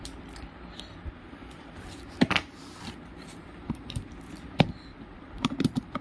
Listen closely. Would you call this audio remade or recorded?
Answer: remade